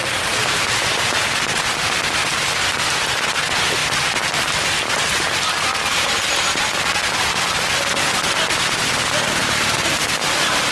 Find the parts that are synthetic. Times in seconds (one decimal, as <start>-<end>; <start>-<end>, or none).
0.4-1.2; 3.8-5.2; 9.4-9.9